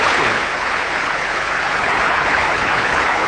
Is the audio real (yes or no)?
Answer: no